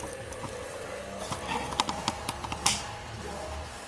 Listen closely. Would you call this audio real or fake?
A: real